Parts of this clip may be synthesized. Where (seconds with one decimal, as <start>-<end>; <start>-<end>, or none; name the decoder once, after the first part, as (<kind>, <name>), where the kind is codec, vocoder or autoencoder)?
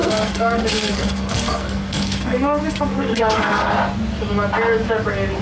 0.0-3.6 (codec, SNAC)